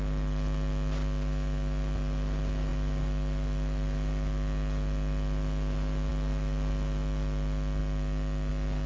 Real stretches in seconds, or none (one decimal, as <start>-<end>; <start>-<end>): 0.0-8.9